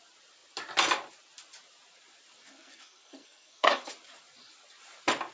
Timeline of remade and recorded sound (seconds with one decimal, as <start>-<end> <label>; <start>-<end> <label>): 0.0-2.5 recorded; 2.5-3.9 remade; 3.9-5.3 recorded